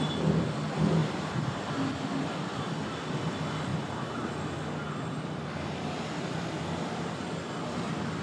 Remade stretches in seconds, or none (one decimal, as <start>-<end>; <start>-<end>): 1.0-2.2; 3.7-4.3

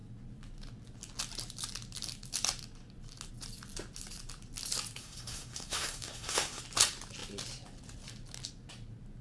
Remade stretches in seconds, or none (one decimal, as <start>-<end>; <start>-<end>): 5.0-6.6

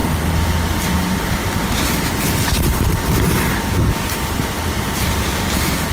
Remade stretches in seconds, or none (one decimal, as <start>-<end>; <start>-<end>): none